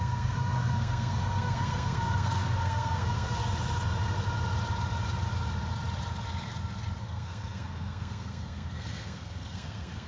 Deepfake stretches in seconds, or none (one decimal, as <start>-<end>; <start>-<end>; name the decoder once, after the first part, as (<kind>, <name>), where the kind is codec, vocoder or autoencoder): 0.0-3.4 (codec, SNAC); 7.0-10.1